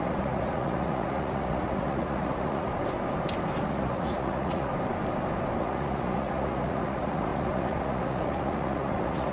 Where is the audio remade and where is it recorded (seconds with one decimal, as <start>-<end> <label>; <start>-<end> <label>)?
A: 0.0-2.7 remade; 2.7-3.6 recorded; 3.6-4.7 remade; 4.7-5.6 recorded; 5.6-9.3 remade